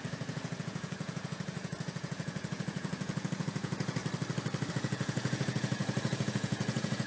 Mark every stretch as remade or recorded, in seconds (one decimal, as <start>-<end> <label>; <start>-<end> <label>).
0.0-4.0 remade; 4.0-4.7 recorded; 4.7-7.1 remade

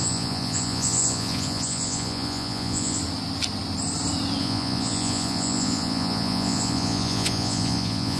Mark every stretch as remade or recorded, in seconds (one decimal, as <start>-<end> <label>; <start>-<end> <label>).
0.0-3.0 remade; 3.0-4.4 recorded; 4.4-8.2 remade

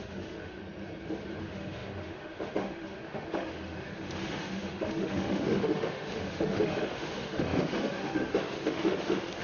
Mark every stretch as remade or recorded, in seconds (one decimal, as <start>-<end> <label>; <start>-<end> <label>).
0.0-0.6 remade; 0.6-1.4 recorded; 1.4-9.4 remade

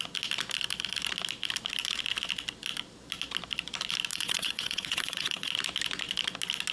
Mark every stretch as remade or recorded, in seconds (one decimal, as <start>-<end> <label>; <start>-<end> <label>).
0.0-4.1 recorded; 4.1-5.5 remade; 5.5-6.7 recorded

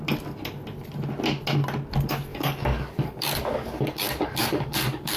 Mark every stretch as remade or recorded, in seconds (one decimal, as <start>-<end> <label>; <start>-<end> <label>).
0.0-2.3 recorded; 2.3-5.2 remade

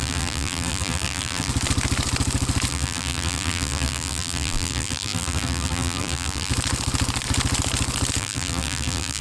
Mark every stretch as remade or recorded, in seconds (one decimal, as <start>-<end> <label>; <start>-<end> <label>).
0.0-1.5 remade; 1.5-2.7 recorded; 2.7-6.5 remade; 6.5-8.2 recorded; 8.2-9.2 remade

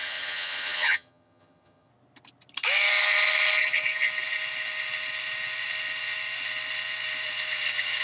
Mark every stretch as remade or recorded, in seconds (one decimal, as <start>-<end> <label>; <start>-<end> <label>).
0.0-1.9 remade; 1.9-8.0 recorded

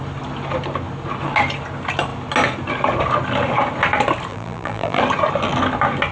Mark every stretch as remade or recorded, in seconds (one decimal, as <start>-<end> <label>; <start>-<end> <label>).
0.0-4.3 recorded; 4.3-5.0 remade; 5.0-6.1 recorded